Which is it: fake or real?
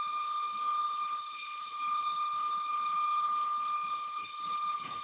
fake